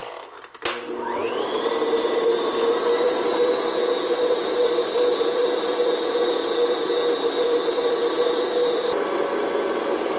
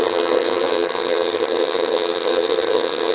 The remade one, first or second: second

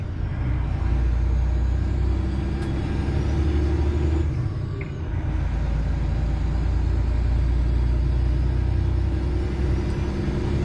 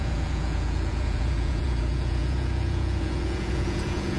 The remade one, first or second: second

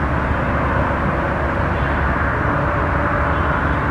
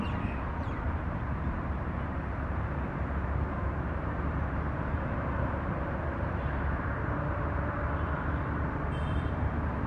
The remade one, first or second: second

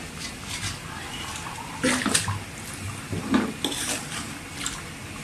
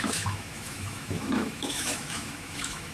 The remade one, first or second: second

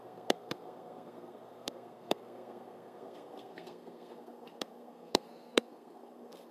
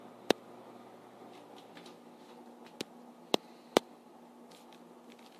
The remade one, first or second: first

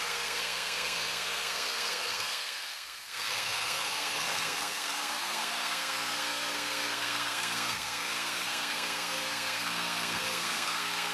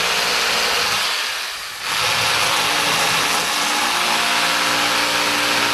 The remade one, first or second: first